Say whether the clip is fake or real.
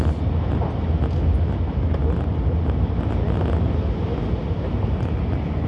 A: real